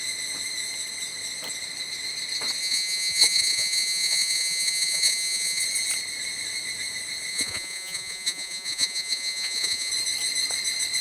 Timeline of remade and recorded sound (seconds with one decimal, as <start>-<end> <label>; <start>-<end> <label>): 0.0-2.6 recorded; 2.6-5.6 remade; 5.6-7.3 recorded; 7.3-9.9 remade; 9.9-11.0 recorded